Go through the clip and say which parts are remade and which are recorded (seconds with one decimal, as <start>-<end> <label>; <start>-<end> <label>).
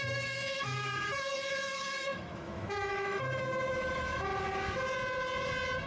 0.0-4.3 remade; 4.3-5.9 recorded